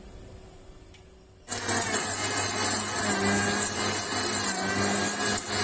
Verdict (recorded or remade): recorded